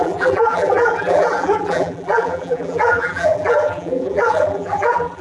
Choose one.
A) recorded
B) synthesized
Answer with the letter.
B